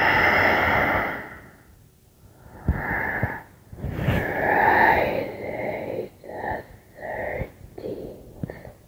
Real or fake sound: real